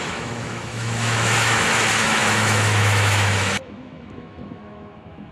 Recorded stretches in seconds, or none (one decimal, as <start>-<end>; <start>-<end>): none